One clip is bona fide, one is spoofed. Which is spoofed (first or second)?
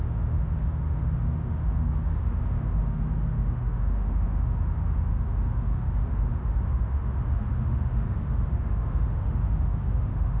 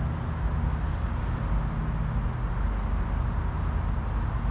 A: first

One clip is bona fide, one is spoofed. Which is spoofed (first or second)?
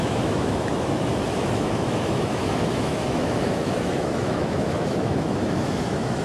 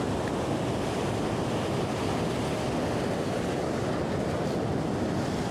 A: first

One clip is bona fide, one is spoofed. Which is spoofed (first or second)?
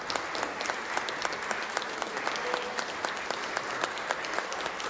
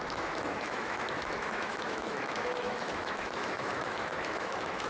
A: second